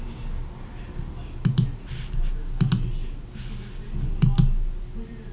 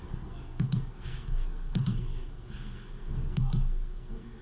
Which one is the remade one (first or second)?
second